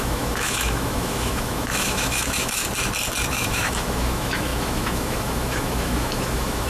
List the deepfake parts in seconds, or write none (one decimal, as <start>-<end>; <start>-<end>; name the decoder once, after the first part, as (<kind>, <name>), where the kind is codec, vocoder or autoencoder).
0.0-2.6 (autoencoder, DAC-VAE); 3.3-6.7